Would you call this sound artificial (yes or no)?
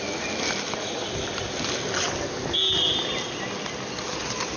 no